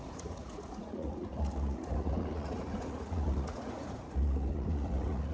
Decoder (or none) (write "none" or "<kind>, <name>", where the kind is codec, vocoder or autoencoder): vocoder, Vocos